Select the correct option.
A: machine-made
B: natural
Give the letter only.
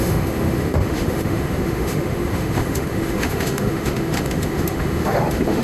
A